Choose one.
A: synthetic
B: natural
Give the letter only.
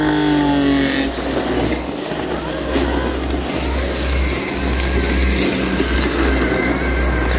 B